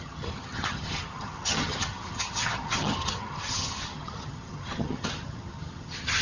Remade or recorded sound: remade